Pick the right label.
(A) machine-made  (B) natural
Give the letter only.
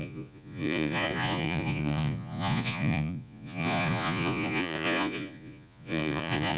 A